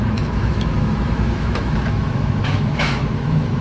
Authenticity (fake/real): fake